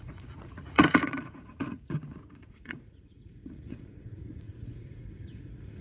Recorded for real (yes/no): no